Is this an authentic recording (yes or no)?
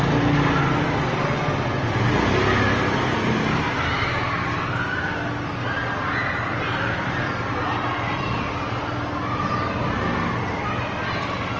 yes